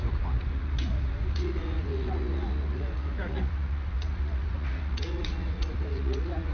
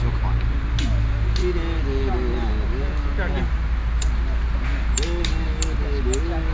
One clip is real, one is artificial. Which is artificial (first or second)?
first